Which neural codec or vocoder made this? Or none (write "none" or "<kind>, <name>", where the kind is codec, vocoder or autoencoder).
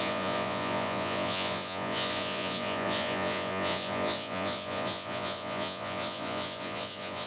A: vocoder, Vocos